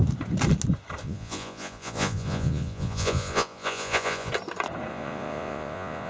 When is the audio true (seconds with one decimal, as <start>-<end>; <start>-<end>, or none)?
0.0-1.0; 4.3-4.9